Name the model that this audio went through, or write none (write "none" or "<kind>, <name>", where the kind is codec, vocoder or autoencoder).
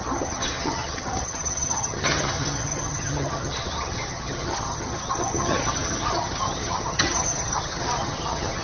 vocoder, HiFi-GAN